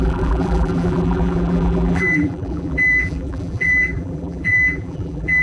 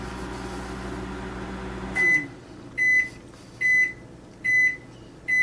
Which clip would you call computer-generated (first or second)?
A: first